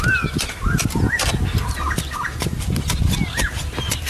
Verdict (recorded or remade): recorded